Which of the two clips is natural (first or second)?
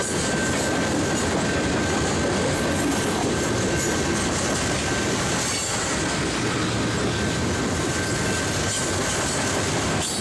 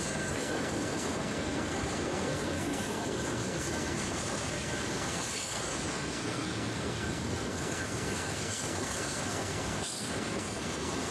first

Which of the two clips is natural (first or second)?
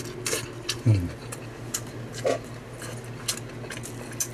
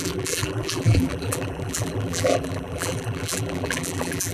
first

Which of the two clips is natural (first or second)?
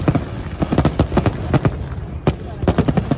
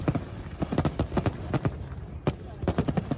first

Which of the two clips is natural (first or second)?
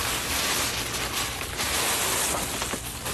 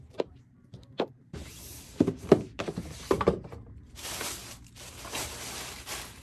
first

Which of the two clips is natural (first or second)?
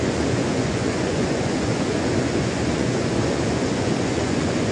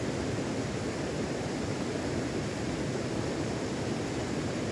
second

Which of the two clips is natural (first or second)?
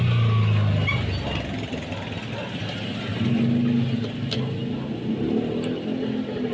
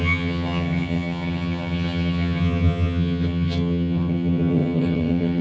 first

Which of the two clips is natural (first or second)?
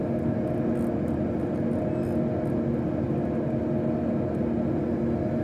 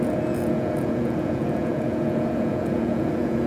first